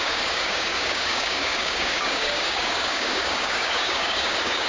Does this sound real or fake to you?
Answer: fake